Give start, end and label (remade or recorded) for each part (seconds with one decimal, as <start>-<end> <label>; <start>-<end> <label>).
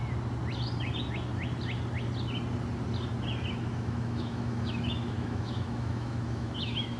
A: 0.0-3.5 recorded; 3.5-7.0 remade